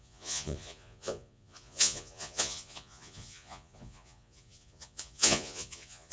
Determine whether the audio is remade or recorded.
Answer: remade